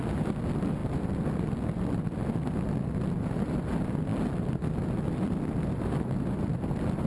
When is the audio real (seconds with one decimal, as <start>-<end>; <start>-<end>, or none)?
0.0-7.1